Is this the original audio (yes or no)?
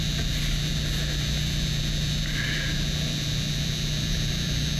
yes